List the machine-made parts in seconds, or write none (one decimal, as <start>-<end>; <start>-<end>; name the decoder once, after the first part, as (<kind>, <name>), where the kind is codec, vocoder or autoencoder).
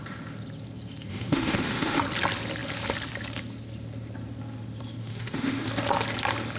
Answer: 1.1-2.0 (autoencoder, DAC-VAE); 5.0-5.7